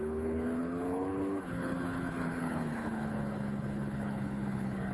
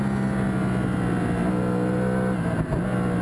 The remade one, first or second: first